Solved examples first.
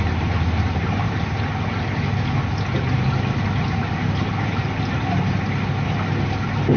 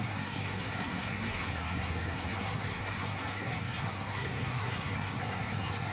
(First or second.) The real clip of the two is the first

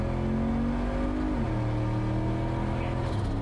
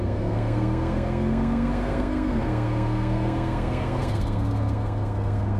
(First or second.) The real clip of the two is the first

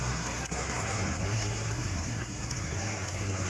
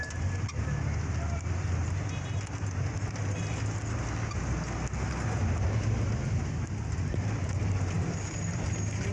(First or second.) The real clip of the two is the second